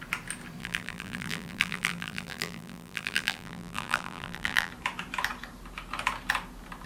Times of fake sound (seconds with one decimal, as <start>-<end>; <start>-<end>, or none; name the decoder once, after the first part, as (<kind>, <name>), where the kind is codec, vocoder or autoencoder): 0.6-4.7 (vocoder, BigVGAN v2)